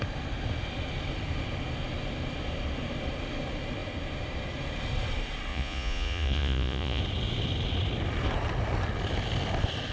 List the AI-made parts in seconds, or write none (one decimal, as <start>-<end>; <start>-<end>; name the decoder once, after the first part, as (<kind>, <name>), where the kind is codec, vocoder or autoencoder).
5.5-7.0 (vocoder, Vocos)